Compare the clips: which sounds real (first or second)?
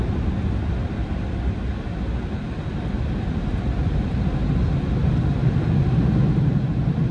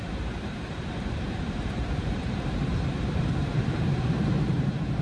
first